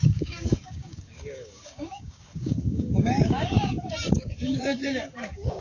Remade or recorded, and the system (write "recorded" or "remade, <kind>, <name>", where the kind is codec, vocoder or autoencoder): remade, codec, DAC